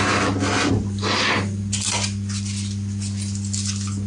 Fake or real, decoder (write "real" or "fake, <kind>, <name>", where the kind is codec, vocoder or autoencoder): real